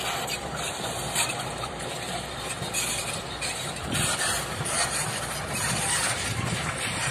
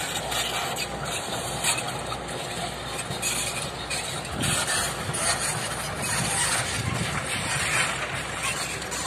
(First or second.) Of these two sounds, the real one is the second